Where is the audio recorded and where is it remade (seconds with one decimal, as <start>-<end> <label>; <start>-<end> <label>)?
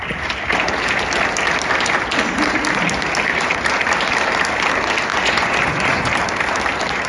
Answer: 0.0-5.1 recorded; 5.1-6.1 remade; 6.1-7.1 recorded